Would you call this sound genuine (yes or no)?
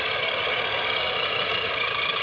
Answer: yes